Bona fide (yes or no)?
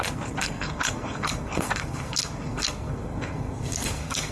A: no